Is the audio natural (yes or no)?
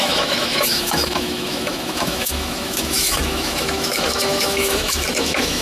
no